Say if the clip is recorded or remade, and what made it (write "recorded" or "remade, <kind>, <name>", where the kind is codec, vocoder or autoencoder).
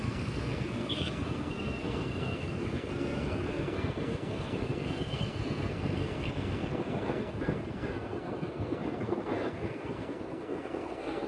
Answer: remade, codec, SNAC